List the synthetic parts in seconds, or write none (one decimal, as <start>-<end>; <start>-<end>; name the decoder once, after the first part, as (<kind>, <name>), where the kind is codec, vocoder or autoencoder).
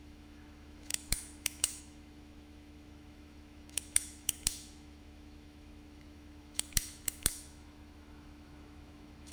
0.0-9.3 (autoencoder, DAC-VAE)